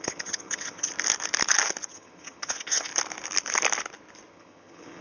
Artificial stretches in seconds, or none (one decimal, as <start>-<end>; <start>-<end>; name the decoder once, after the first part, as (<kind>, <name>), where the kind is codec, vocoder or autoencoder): 0.0-0.9 (vocoder, HiFi-GAN); 1.9-2.9; 4.3-5.0